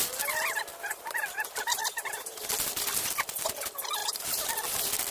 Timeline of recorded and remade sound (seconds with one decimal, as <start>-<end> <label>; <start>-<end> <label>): 0.0-5.1 recorded